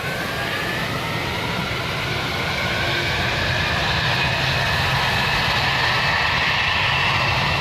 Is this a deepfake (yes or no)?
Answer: no